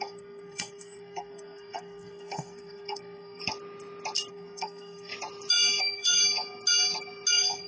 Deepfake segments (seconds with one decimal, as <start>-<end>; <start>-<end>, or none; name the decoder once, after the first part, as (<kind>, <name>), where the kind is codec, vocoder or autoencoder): 0.0-3.4 (codec, SNAC); 4.3-5.1; 5.8-6.2; 7.3-7.7